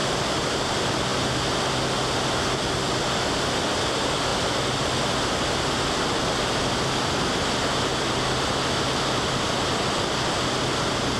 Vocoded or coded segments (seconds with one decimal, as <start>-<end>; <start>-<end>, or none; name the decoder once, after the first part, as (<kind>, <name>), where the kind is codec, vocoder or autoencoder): 0.0-0.7 (vocoder, BigVGAN v2)